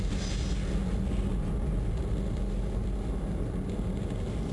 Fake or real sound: real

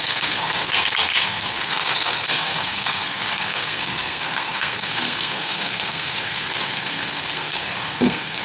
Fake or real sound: fake